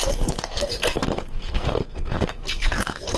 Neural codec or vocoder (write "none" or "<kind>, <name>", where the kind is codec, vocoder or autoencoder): codec, SNAC